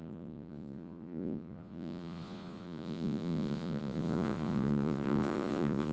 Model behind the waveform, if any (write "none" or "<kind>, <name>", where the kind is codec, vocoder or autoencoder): vocoder, Vocos